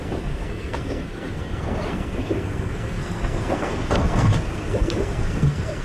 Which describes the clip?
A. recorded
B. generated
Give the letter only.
B